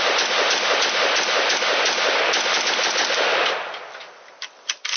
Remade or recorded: recorded